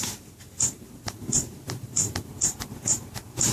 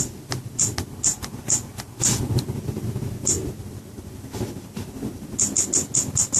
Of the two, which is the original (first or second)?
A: second